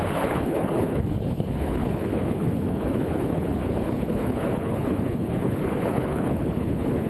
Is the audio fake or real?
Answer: fake